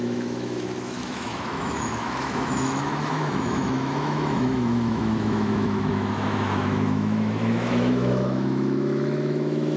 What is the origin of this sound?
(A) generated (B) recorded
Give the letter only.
A